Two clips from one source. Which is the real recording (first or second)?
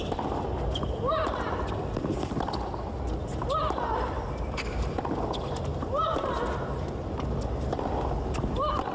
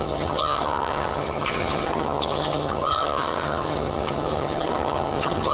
first